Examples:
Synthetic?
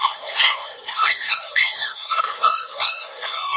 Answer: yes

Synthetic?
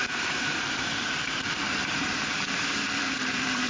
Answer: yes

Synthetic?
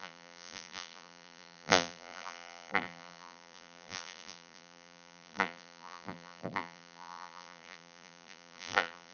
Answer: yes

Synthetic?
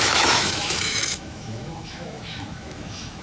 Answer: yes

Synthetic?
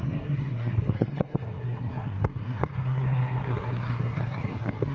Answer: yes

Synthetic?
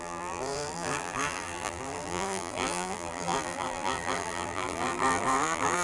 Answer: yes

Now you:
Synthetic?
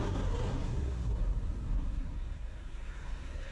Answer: yes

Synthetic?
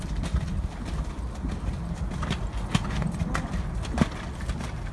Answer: no